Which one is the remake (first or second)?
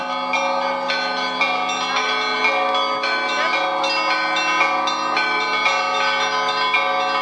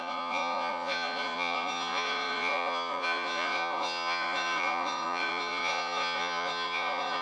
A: second